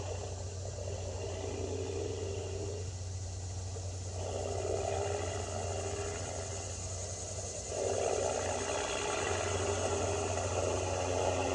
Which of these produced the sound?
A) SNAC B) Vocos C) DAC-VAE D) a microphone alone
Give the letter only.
D